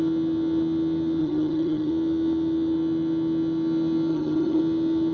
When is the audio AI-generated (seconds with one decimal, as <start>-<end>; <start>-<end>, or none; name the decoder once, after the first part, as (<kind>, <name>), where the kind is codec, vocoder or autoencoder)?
1.2-1.9 (vocoder, HiFi-GAN); 4.1-4.6